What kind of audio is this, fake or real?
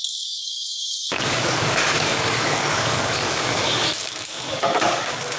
fake